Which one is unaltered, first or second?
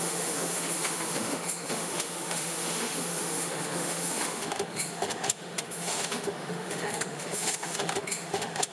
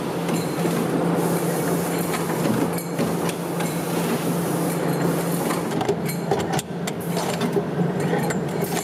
second